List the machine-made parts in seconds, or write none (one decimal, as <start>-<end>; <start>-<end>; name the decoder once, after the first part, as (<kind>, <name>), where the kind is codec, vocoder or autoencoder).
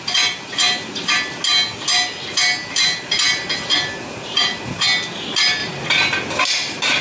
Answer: 5.6-6.4 (vocoder, BigVGAN v2)